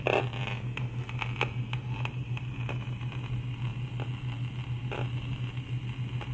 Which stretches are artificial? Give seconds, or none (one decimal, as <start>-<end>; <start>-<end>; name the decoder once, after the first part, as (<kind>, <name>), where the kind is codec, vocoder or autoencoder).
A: none